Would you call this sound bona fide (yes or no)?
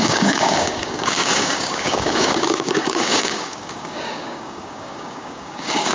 no